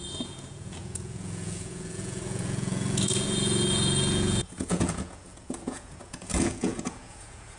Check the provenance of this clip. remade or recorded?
remade